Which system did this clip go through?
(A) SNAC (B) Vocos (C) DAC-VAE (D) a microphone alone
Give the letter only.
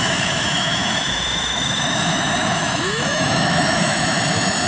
C